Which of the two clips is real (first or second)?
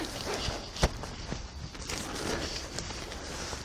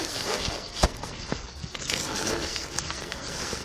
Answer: first